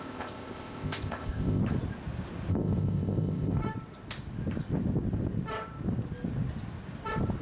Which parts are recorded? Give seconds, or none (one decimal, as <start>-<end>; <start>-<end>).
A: 1.6-2.5; 3.6-7.4